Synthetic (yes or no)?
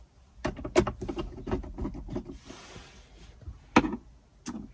no